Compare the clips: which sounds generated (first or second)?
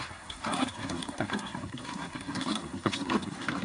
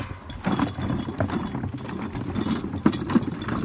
first